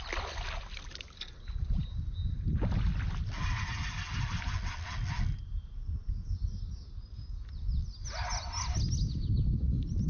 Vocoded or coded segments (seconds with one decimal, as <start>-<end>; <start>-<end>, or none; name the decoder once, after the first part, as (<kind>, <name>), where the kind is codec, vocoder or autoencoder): none